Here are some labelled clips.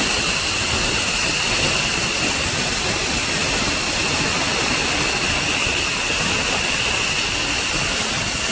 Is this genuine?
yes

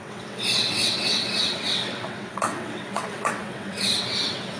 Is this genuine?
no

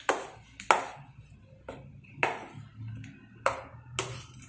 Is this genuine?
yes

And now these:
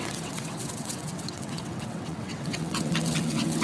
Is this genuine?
no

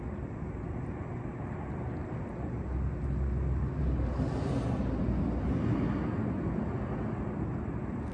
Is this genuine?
yes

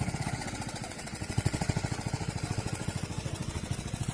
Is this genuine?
no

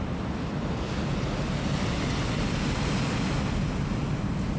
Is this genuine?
yes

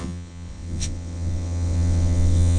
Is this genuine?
no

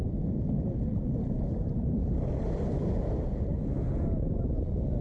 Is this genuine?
yes